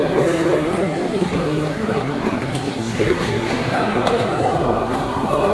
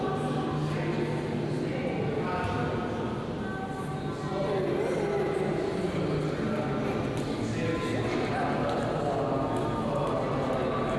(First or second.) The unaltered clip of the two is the second